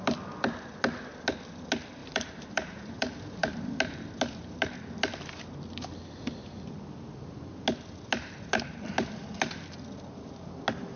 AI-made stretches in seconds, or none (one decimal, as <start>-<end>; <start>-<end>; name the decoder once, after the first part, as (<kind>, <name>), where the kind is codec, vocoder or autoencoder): 2.0-3.8 (vocoder, BigVGAN v2)